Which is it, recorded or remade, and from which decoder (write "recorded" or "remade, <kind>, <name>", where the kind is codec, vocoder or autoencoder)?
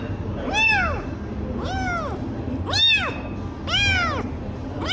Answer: recorded